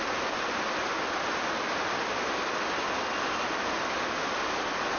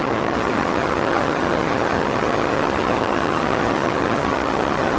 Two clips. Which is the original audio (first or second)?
first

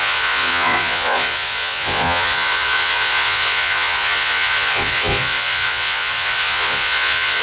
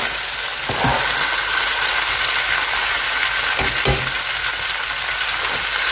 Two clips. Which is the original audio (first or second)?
second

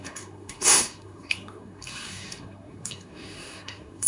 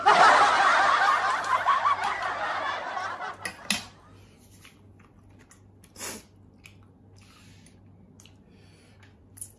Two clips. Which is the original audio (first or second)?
second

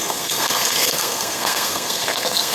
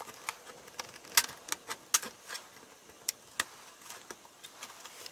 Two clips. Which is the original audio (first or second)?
second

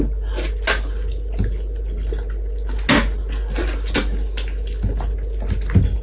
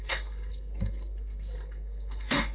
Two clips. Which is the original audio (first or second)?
first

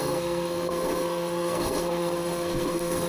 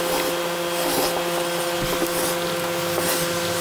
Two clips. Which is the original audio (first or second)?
second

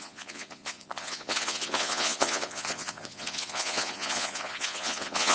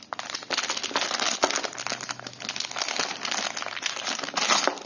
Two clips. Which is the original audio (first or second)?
second